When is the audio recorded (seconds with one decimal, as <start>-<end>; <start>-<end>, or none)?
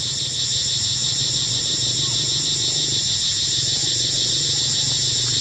0.0-1.0; 1.6-3.8; 4.3-5.4